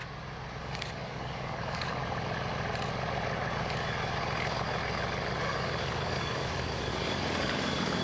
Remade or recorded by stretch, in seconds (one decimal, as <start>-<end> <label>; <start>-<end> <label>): 0.0-0.6 recorded; 0.6-2.0 remade; 2.0-5.4 recorded; 5.4-8.0 remade